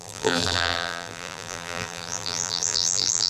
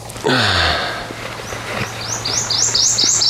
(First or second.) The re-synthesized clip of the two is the first